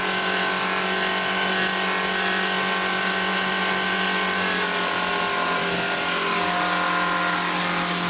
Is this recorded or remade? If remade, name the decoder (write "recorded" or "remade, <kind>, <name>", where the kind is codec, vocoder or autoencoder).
recorded